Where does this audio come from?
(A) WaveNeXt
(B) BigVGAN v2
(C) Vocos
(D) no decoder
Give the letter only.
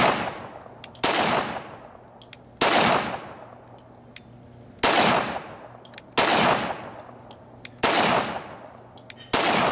D